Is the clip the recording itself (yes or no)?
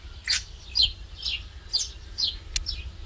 yes